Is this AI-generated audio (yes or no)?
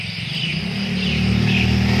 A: no